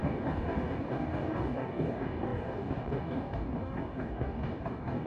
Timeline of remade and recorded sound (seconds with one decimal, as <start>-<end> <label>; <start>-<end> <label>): 0.0-5.1 remade